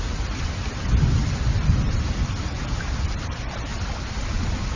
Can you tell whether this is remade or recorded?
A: recorded